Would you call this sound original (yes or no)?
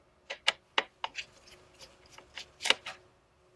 yes